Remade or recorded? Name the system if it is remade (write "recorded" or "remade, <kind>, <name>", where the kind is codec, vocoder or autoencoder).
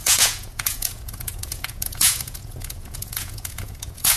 remade, vocoder, Vocos